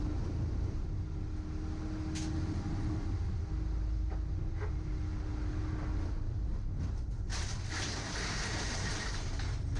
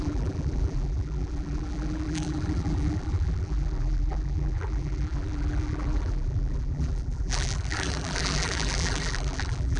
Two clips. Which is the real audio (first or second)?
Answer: first